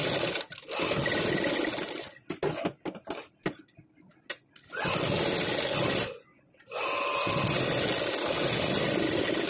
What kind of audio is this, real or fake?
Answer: real